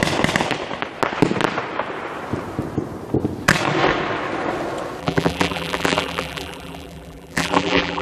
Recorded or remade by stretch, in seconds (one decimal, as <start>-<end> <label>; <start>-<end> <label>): 0.0-5.0 recorded; 5.0-8.0 remade